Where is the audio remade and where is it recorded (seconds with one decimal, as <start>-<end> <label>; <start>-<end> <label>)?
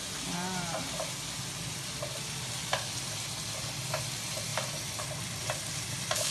0.0-6.3 recorded